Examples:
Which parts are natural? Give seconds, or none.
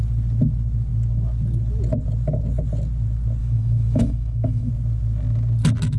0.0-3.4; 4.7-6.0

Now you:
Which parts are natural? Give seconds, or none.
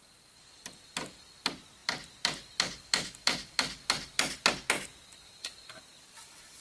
0.0-6.6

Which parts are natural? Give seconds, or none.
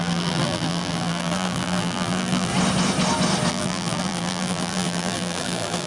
2.5-3.5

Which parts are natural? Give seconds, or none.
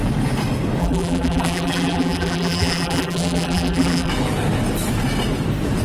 0.0-0.8; 4.1-5.8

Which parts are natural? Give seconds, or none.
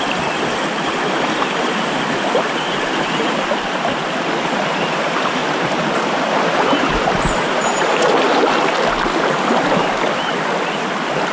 0.0-5.4; 7.9-11.3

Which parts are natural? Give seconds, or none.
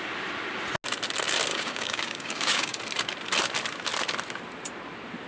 0.0-1.5; 2.8-5.3